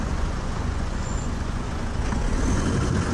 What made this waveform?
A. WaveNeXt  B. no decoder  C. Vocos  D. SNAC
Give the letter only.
C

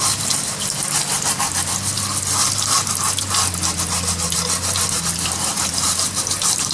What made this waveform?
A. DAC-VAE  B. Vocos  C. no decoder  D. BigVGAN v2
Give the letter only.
C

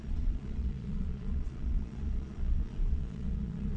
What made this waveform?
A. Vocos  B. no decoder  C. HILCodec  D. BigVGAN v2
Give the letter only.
A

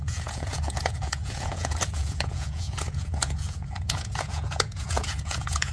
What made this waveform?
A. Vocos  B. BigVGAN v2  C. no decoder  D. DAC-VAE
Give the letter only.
A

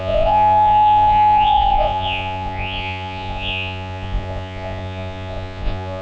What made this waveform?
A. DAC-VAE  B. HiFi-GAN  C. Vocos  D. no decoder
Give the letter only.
C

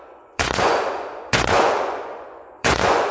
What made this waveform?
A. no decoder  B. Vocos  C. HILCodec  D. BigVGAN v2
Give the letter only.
B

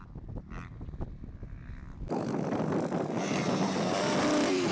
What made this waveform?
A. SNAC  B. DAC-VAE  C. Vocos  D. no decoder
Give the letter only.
D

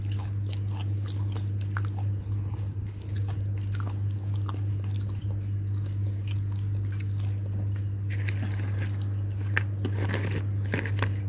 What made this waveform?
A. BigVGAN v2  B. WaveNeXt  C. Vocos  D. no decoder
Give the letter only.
D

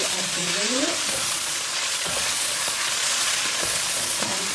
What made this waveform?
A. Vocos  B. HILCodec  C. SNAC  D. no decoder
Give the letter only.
A